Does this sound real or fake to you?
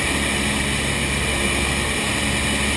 real